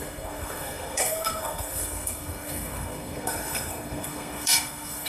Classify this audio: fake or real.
fake